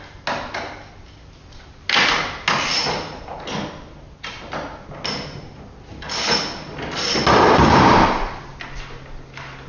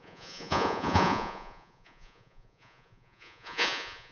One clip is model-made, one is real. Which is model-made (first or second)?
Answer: second